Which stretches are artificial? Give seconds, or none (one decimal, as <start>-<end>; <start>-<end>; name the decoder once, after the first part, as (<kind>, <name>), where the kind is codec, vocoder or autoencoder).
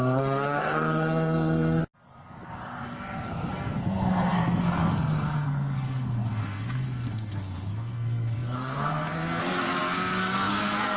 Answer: 0.0-1.8 (codec, SNAC); 2.5-11.0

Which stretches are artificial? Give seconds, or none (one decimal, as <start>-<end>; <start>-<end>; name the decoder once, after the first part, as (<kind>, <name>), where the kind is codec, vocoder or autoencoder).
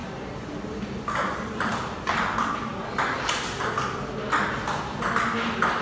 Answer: none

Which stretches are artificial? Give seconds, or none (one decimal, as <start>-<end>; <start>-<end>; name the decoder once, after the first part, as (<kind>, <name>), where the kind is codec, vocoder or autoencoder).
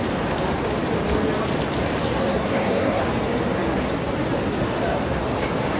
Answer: 2.2-3.0 (codec, SNAC)